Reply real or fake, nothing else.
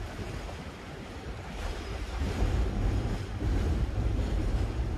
fake